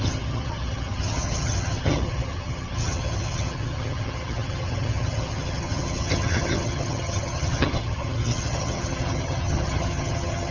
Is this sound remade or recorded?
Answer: remade